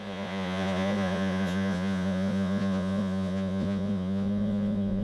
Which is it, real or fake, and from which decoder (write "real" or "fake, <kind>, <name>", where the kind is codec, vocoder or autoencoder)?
fake, vocoder, Vocos